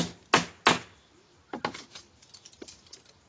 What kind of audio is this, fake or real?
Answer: real